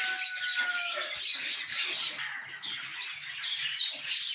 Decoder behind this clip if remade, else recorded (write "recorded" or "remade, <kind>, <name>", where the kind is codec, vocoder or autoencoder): recorded